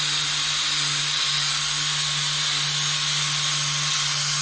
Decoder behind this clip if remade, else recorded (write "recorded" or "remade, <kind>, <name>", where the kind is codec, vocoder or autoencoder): recorded